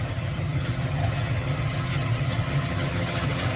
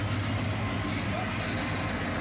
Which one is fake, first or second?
first